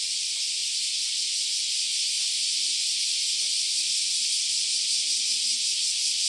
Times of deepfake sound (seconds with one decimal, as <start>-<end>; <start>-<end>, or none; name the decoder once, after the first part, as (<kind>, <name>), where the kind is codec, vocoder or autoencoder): 0.0-0.6 (vocoder, BigVGAN v2); 1.2-1.9; 3.9-5.5